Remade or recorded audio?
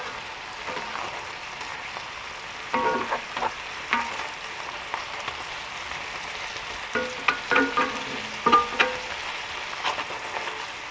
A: recorded